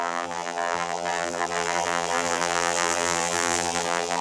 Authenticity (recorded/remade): remade